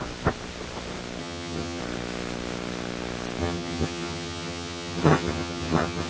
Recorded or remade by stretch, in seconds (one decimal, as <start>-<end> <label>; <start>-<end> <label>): 0.0-1.2 recorded; 1.2-1.8 remade; 1.8-3.4 recorded; 3.4-6.1 remade